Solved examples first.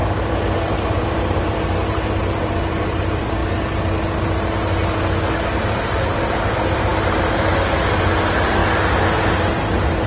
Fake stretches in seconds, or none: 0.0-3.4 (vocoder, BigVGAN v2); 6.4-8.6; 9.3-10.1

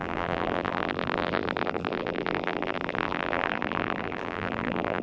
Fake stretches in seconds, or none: 0.0-5.0 (vocoder, BigVGAN v2)

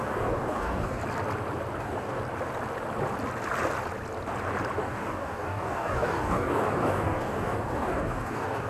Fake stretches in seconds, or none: 0.0-1.0 (codec, DAC); 1.8-2.2; 4.8-8.7

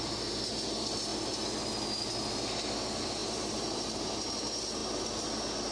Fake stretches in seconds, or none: 3.2-4.1 (vocoder, BigVGAN v2)

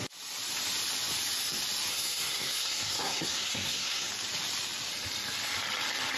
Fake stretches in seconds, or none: 1.9-4.1 (codec, SNAC)

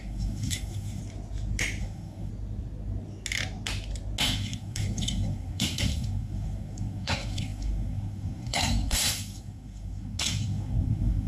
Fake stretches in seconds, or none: 0.0-1.0 (codec, SNAC); 1.8-2.3; 4.2-11.3

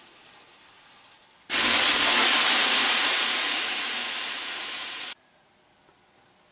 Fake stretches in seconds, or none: 2.6-5.5 (vocoder, Vocos)